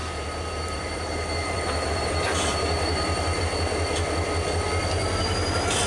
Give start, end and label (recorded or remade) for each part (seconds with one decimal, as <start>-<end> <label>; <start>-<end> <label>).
0.0-3.4 remade; 3.4-5.9 recorded